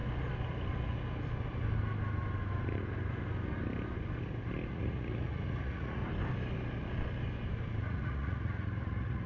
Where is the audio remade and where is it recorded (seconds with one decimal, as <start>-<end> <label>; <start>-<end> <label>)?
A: 0.0-4.7 recorded; 4.7-6.0 remade; 6.0-7.8 recorded; 7.8-9.3 remade